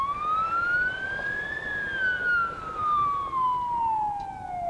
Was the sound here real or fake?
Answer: real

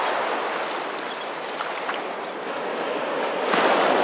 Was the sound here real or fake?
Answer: real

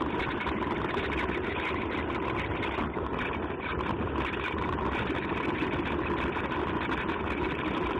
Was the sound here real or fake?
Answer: real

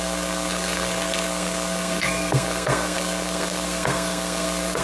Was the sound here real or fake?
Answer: fake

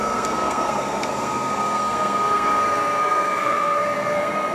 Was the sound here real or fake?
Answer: fake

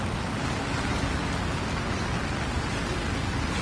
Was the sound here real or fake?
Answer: real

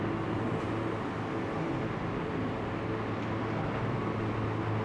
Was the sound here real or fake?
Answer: real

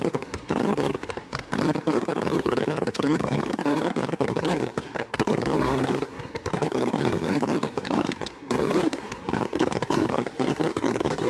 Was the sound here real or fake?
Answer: fake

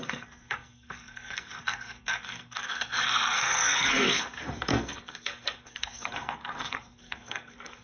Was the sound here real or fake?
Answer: fake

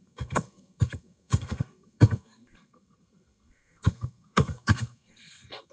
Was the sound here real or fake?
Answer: fake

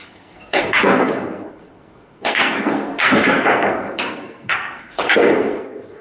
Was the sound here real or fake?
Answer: fake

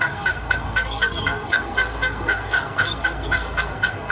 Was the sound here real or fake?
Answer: fake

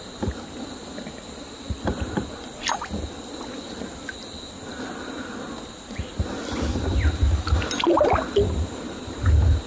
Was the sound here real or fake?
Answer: real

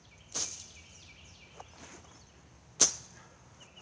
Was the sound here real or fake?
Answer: real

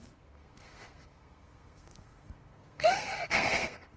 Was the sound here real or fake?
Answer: fake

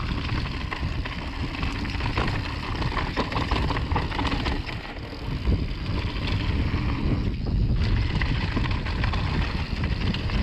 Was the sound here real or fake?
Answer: real